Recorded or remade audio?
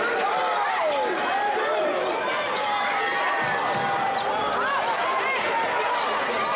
recorded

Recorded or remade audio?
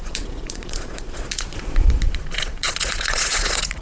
remade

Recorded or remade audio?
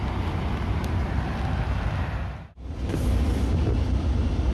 recorded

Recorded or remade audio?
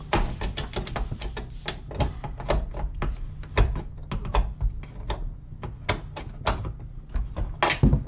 recorded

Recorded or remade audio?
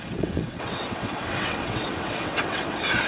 remade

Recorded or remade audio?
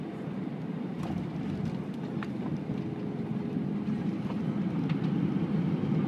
recorded